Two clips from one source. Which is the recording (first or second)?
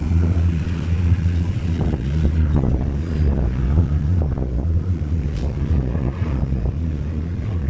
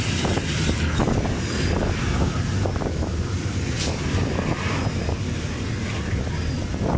second